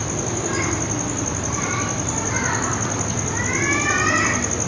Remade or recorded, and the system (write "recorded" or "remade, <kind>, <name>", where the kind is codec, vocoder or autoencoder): recorded